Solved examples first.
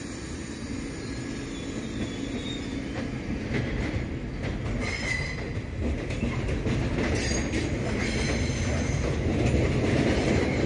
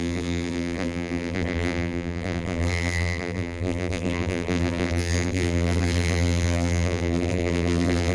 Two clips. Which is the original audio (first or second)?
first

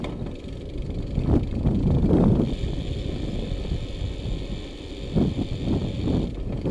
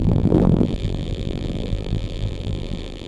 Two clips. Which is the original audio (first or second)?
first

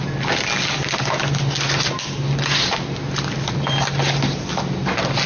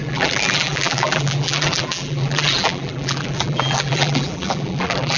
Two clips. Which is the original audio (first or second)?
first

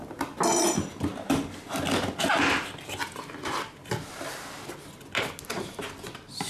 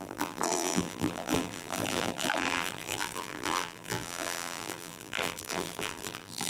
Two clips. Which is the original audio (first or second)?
first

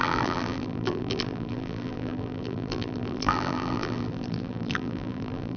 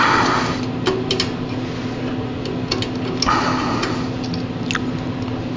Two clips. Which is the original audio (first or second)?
second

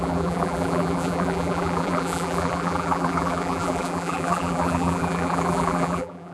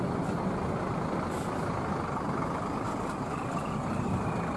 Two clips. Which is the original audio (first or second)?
second